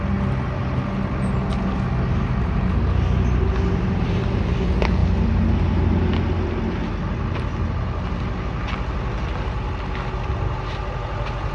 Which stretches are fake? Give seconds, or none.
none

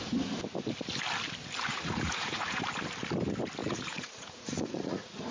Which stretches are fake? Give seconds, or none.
1.7-2.6 (vocoder, Vocos); 3.6-5.3

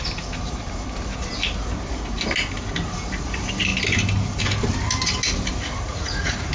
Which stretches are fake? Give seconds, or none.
5.9-6.5 (vocoder, Vocos)